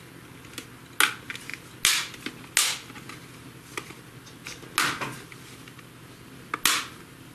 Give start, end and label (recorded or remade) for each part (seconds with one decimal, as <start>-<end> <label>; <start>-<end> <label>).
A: 0.0-7.3 recorded